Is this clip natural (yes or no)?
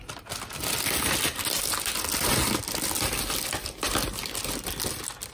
yes